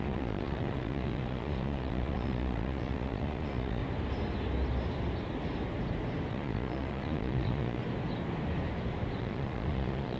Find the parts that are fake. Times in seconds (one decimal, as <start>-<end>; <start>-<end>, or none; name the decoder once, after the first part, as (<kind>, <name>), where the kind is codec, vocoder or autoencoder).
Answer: 0.0-3.8 (vocoder, Vocos); 6.3-7.8; 9.2-10.2